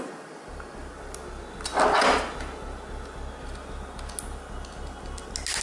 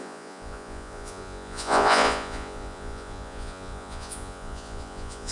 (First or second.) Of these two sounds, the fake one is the second